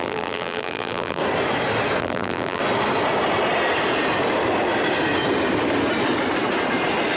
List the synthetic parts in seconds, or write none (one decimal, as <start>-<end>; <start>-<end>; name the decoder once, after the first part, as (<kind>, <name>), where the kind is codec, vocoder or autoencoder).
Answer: 0.0-1.2 (vocoder, BigVGAN v2); 2.0-2.6